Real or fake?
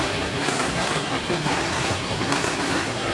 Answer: fake